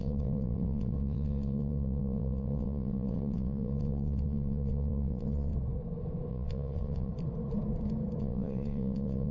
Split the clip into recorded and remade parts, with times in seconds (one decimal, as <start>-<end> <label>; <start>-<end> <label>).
0.0-5.5 remade; 5.5-6.3 recorded; 6.3-7.1 remade; 7.1-8.2 recorded; 8.2-9.3 remade